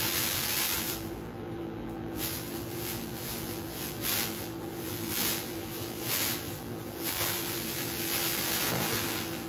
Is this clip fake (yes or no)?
yes